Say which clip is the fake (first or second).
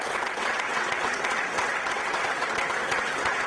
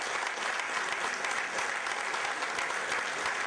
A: first